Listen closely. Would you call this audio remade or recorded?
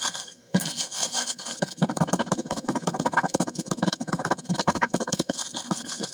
remade